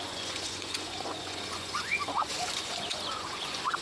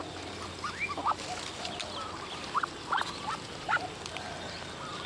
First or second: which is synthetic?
first